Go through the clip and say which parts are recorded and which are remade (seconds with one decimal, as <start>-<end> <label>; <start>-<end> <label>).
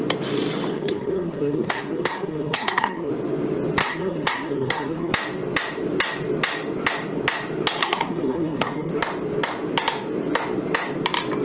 0.0-0.7 recorded; 0.7-3.1 remade; 3.1-3.8 recorded; 3.8-5.1 remade; 5.1-7.8 recorded; 7.8-8.9 remade; 8.9-11.4 recorded